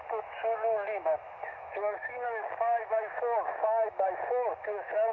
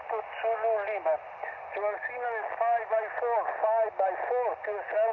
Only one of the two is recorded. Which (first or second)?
second